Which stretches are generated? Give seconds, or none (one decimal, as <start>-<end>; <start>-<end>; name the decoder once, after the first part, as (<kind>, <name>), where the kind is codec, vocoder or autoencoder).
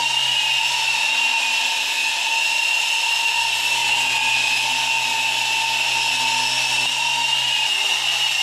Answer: 0.6-2.0 (vocoder, BigVGAN v2); 3.0-8.4